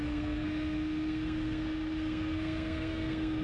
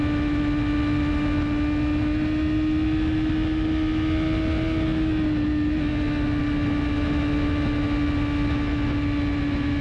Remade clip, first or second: first